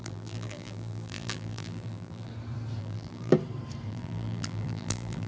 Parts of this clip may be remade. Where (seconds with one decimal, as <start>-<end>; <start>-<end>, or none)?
0.0-2.3; 2.8-3.3; 3.9-5.3